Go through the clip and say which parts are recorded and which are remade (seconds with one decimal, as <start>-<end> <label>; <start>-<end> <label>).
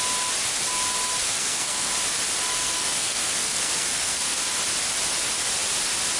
0.0-1.2 recorded; 1.2-1.9 remade; 1.9-2.5 recorded; 2.5-4.4 remade; 4.4-6.2 recorded